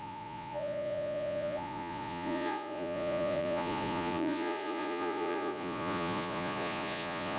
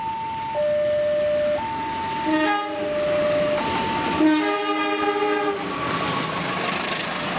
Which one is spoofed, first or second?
first